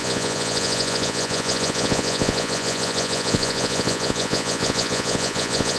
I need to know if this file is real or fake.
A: fake